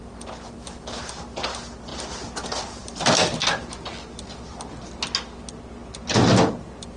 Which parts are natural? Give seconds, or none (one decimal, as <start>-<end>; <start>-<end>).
0.0-7.0